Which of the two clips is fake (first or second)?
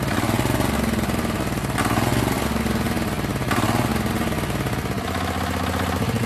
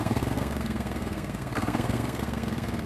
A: second